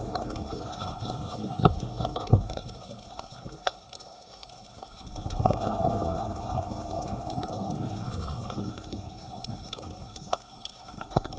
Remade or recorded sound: remade